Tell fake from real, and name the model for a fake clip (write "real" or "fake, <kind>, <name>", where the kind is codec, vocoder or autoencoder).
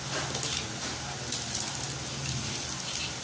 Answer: real